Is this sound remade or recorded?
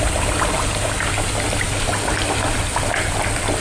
remade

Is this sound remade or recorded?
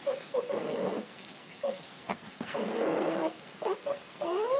remade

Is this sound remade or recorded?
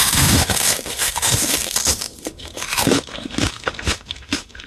remade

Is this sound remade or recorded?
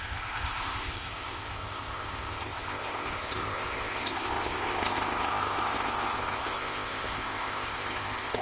remade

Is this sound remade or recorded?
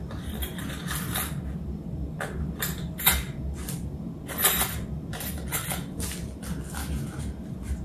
recorded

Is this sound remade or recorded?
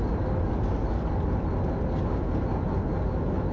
recorded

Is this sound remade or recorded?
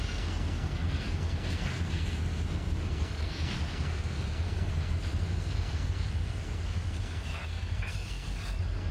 remade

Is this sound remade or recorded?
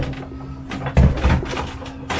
recorded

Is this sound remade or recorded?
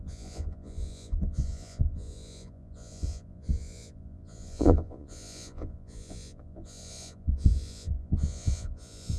remade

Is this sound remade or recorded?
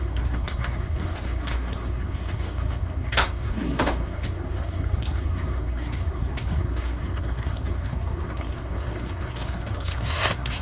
remade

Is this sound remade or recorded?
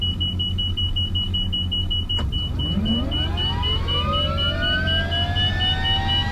recorded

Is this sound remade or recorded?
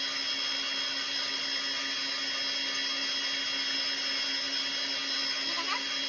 recorded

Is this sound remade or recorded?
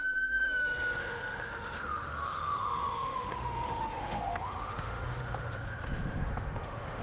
remade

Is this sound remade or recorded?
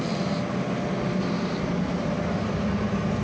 recorded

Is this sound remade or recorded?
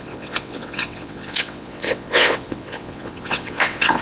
remade